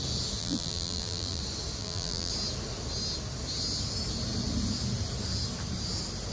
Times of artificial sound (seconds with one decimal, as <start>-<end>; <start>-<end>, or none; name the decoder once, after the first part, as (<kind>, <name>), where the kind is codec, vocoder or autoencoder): 0.4-1.4 (vocoder, BigVGAN v2); 1.8-2.3